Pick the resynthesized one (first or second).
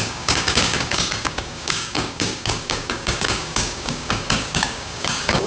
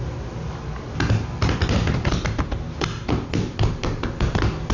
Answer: first